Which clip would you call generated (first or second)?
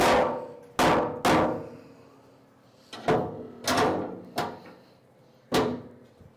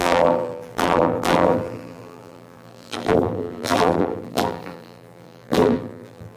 second